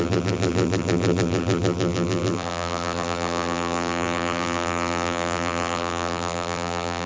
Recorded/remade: remade